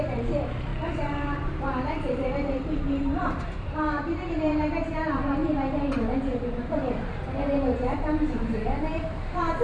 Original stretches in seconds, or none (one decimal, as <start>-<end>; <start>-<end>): 5.4-6.6